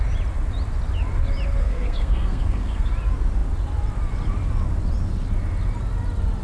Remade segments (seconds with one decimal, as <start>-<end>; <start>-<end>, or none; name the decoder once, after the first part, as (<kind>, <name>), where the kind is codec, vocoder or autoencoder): 1.6-2.9 (codec, SNAC)